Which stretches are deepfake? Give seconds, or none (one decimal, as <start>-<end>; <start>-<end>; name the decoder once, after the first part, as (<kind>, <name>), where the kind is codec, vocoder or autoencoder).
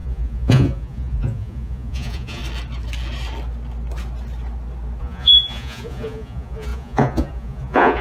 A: 0.0-2.4 (vocoder, Vocos); 5.0-8.0